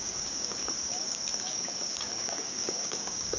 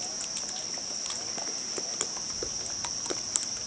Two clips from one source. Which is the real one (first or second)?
second